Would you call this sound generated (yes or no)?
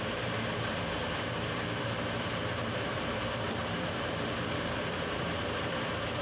yes